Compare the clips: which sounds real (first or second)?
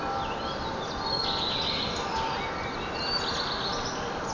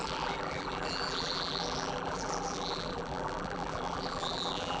first